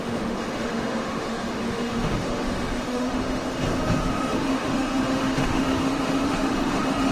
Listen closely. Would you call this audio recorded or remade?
remade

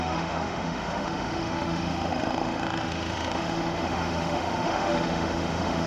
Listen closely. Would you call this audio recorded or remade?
remade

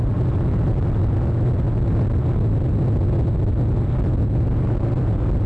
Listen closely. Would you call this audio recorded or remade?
recorded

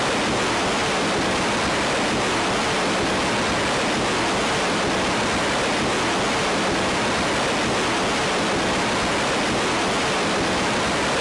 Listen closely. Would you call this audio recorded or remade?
recorded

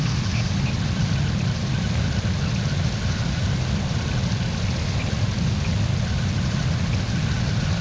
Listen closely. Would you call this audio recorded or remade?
recorded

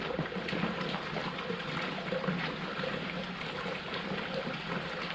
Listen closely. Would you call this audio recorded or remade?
recorded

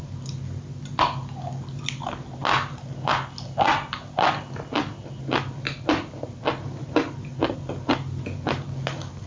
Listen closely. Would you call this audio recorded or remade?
recorded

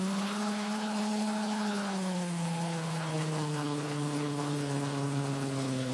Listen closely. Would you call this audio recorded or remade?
remade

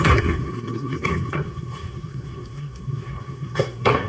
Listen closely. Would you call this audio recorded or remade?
remade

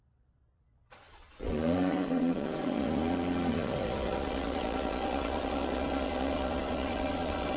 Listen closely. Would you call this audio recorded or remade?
remade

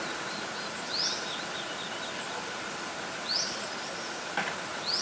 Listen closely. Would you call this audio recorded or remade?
recorded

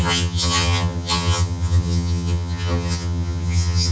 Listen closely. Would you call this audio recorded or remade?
remade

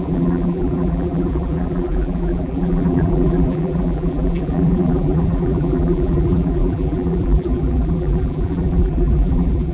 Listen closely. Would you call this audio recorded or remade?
remade